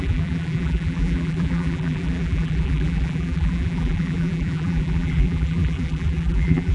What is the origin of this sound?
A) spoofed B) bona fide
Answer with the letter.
A